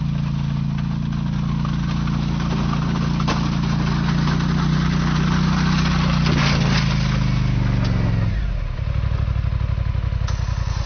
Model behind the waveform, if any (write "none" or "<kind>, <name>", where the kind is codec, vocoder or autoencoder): none